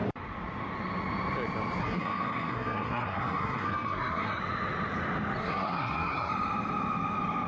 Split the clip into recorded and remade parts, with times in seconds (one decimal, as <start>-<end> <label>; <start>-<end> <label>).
0.0-1.8 recorded; 1.8-4.4 remade; 4.4-5.4 recorded; 5.4-6.3 remade; 6.3-7.5 recorded